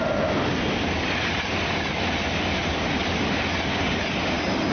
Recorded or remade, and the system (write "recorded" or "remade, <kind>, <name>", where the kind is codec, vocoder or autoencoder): recorded